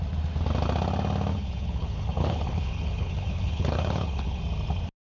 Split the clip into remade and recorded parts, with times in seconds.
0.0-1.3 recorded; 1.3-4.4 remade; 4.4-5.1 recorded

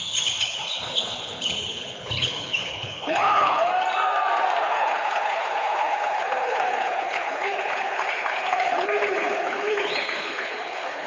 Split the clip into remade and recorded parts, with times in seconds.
0.0-3.7 remade; 3.7-4.6 recorded; 4.6-11.1 remade

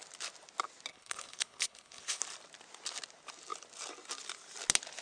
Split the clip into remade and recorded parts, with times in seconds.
0.0-0.9 recorded; 0.9-2.2 remade; 2.2-5.0 recorded